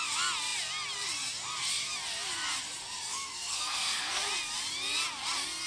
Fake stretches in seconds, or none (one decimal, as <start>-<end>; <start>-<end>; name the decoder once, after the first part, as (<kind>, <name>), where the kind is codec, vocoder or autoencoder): 3.1-4.2 (codec, SNAC)